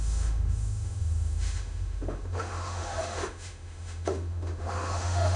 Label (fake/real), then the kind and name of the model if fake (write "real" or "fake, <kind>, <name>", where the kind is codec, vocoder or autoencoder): fake, autoencoder, DAC-VAE